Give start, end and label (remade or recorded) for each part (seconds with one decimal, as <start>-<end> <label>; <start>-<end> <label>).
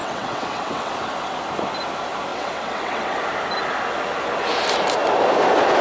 0.0-0.9 remade; 0.9-2.3 recorded; 2.3-3.2 remade; 3.2-5.8 recorded